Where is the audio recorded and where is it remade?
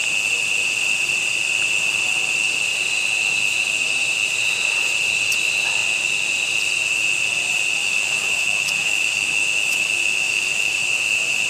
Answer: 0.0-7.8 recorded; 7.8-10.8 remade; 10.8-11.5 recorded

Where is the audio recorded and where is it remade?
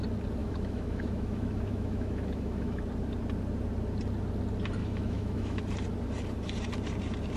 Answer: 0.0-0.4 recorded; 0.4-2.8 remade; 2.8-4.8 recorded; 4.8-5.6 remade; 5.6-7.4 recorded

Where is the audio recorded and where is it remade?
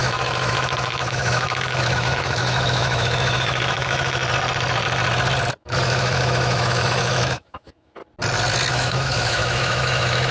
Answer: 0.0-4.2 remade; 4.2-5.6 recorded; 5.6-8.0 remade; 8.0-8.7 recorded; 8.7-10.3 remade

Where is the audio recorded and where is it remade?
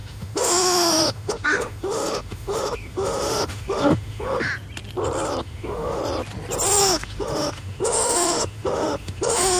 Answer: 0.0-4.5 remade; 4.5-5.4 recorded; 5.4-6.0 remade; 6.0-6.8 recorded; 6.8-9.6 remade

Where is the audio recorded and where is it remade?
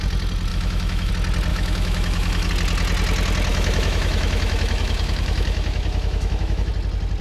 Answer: 0.0-0.5 recorded; 0.5-1.1 remade; 1.1-1.5 recorded; 1.5-2.5 remade; 2.5-3.5 recorded; 3.5-6.7 remade; 6.7-7.2 recorded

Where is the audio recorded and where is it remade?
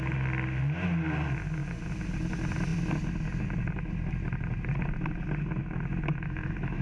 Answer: 0.0-5.6 recorded; 5.6-6.8 remade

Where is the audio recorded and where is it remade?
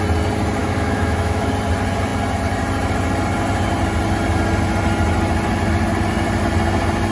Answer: 0.0-0.6 recorded; 0.6-1.5 remade; 1.5-7.1 recorded